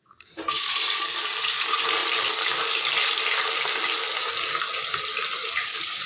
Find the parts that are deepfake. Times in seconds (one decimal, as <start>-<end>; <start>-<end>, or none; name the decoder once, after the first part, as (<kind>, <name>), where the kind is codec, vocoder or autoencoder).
0.0-0.7 (codec, DAC)